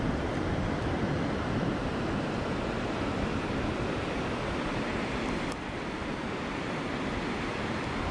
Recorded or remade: remade